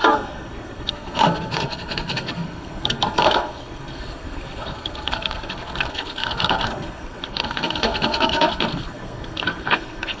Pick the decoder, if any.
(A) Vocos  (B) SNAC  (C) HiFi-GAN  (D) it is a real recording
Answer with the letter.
B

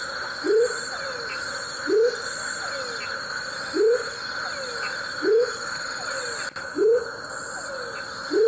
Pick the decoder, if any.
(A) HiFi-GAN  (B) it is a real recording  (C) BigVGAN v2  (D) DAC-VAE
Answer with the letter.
B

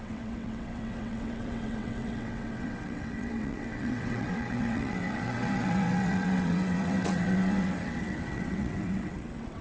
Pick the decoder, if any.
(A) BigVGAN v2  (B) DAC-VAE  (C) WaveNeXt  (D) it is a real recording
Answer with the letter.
C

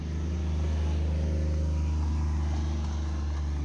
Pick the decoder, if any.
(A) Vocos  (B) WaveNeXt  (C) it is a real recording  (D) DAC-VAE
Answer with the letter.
C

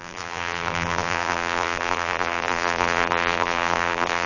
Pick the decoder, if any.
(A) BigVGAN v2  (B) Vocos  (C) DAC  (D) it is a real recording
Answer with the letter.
A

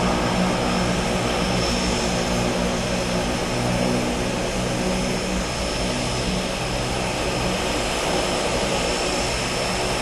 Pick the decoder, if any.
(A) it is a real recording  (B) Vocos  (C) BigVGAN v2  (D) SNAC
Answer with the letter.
A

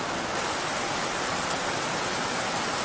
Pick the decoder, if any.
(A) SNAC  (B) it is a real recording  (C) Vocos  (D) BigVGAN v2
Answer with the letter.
D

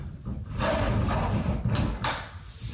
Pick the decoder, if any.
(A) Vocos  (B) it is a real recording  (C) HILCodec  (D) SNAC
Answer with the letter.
B